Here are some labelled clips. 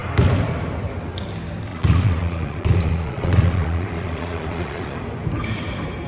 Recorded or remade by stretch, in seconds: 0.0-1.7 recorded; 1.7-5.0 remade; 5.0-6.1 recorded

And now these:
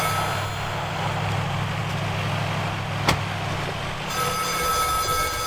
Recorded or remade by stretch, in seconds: 0.0-5.5 recorded